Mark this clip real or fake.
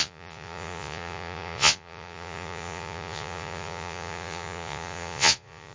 fake